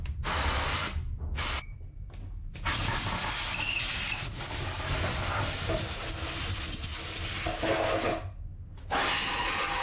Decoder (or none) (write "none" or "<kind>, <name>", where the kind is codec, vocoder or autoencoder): none